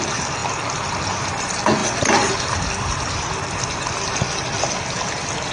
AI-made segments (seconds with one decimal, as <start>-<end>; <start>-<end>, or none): none